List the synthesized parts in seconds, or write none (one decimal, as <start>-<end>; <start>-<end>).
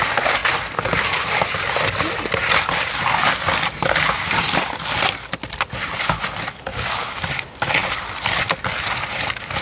6.7-7.2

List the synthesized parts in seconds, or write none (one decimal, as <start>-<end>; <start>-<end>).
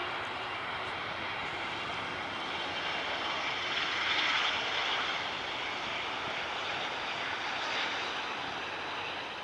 none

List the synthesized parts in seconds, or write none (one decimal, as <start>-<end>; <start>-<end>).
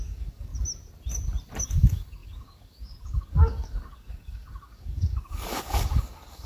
0.0-0.5; 1.6-6.5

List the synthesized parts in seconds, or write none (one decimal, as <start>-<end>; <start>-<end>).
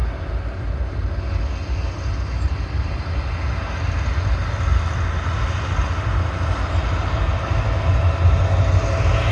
none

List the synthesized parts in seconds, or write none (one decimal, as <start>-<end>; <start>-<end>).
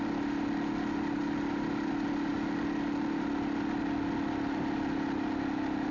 none